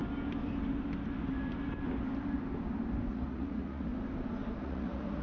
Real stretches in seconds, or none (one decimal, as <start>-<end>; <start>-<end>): 0.0-3.1; 3.9-4.6